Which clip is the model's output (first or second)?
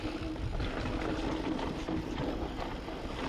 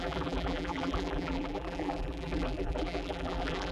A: second